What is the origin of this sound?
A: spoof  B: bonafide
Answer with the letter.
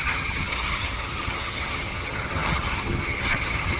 A